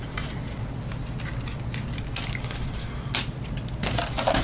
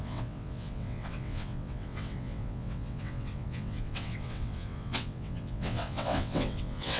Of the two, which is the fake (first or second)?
second